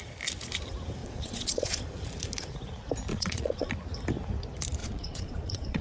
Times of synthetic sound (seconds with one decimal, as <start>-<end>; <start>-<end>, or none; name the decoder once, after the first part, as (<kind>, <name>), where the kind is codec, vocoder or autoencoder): 1.0-1.8 (vocoder, Vocos); 3.1-3.7; 4.8-5.8

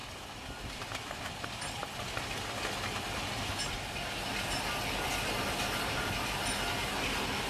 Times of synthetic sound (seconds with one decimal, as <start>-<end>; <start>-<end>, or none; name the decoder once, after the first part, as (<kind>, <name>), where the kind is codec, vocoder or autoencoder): none